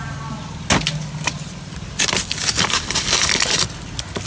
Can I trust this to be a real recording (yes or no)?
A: yes